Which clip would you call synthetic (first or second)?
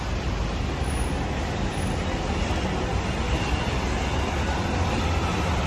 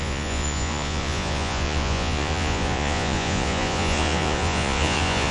second